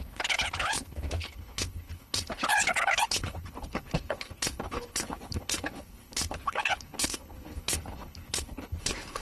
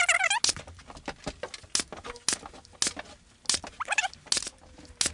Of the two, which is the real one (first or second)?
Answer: second